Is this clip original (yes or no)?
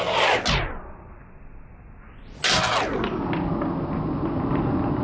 yes